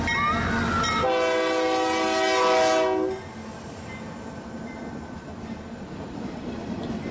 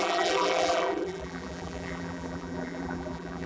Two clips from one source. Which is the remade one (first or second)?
second